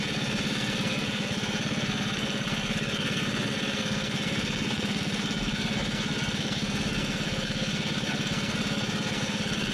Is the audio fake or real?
fake